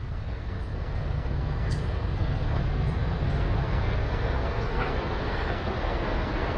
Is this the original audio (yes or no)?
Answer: no